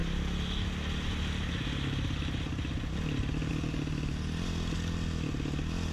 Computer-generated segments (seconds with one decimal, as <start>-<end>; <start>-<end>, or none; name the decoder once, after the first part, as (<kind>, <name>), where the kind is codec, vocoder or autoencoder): none